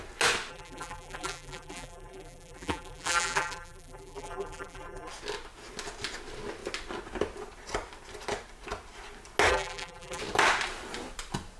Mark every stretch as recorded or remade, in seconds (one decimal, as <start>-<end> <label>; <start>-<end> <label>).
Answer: 0.0-0.5 recorded; 0.5-5.1 remade; 5.1-9.5 recorded; 9.5-10.2 remade; 10.2-11.6 recorded